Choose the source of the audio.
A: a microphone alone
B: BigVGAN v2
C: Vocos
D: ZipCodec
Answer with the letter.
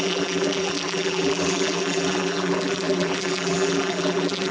B